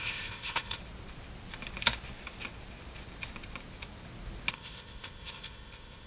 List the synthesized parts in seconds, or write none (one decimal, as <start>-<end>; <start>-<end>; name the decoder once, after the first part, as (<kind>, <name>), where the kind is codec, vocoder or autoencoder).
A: 0.0-0.8 (codec, ZipCodec); 4.5-6.1